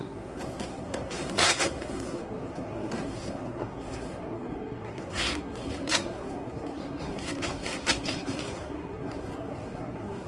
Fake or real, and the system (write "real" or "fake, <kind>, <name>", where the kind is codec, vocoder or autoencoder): fake, codec, SNAC